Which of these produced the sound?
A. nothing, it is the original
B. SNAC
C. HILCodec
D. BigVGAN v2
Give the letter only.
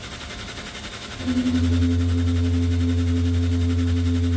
A